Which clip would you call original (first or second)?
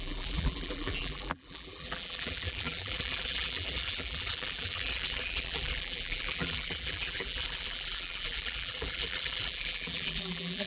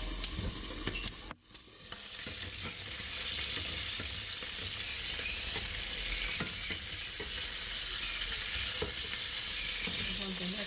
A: second